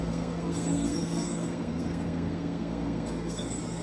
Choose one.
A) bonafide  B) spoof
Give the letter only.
B